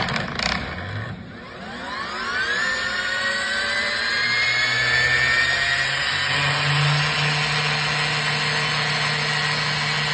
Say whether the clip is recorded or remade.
recorded